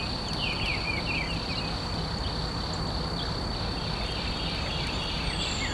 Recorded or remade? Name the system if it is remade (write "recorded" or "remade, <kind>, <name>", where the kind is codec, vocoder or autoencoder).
recorded